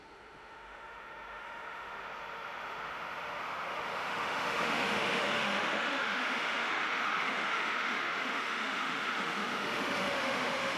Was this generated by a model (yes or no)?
yes